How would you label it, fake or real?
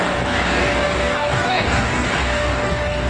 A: fake